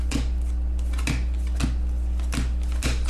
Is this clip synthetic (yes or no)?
no